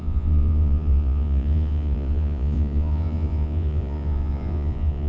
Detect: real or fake fake